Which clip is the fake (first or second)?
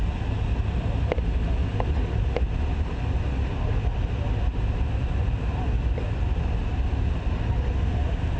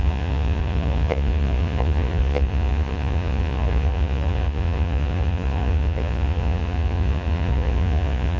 second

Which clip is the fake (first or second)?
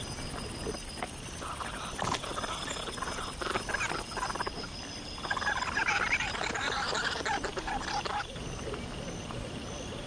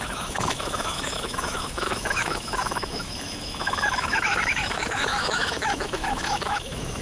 second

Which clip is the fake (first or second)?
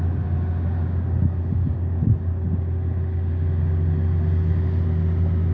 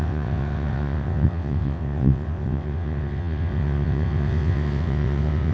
second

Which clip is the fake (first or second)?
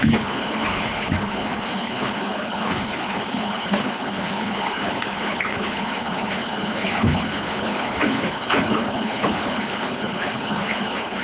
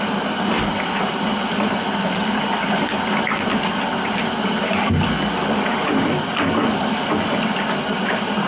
first